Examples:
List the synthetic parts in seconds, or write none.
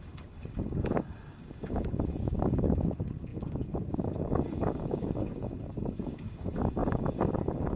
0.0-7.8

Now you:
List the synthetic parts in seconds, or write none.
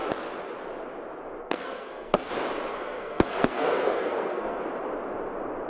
1.4-2.3; 2.7-4.6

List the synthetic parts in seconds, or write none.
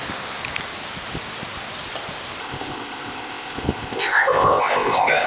2.4-5.3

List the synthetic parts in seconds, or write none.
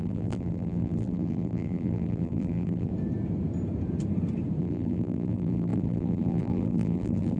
0.0-2.9; 4.6-7.4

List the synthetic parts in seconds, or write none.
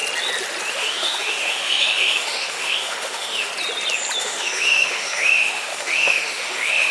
0.7-3.5; 4.2-6.9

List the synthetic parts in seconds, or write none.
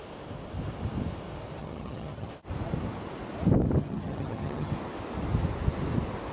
1.6-2.3; 3.8-4.7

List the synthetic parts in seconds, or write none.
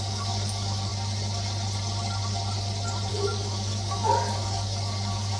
0.0-0.9; 3.1-5.4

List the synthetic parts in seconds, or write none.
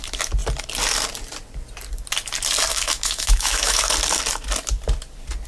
2.7-3.9